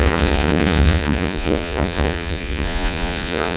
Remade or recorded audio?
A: remade